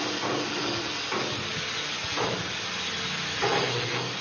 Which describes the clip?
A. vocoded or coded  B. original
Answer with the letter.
B